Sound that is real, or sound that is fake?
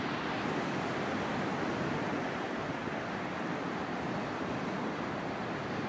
real